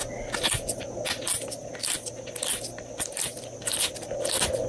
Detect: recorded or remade recorded